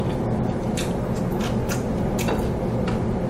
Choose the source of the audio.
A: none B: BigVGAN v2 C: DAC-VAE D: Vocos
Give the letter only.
A